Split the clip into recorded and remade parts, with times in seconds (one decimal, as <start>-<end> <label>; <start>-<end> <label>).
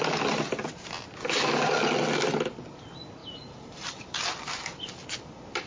0.0-5.7 recorded